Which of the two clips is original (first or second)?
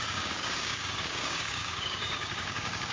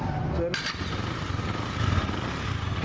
second